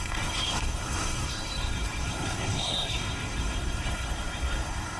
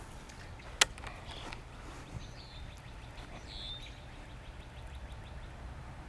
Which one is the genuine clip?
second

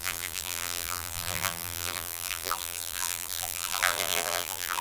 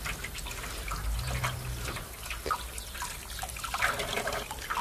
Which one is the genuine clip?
second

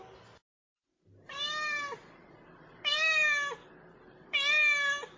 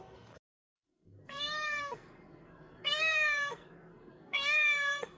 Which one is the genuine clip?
first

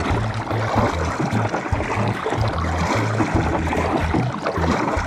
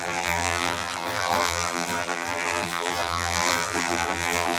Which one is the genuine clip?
first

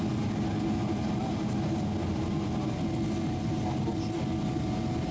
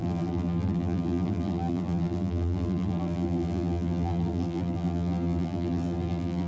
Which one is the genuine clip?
first